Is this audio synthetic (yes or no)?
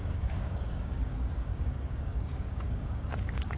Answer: yes